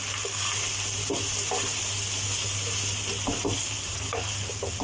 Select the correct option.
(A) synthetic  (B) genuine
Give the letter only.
B